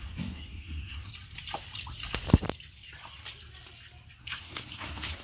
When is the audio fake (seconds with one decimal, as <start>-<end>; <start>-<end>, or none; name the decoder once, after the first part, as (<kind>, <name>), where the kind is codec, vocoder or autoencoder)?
0.0-1.1 (codec, SNAC); 4.2-5.2